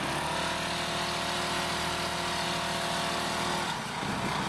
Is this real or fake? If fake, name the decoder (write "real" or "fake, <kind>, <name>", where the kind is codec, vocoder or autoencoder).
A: real